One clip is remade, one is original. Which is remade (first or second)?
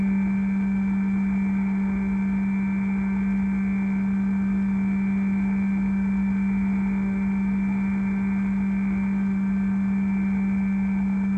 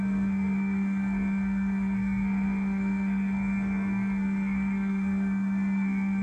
second